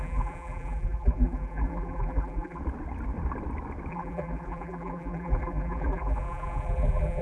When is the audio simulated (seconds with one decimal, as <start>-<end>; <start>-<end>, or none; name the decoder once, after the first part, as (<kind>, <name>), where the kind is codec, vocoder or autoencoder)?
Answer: 0.0-2.6 (vocoder, BigVGAN v2); 3.9-7.2